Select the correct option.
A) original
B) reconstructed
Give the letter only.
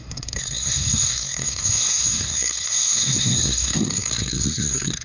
B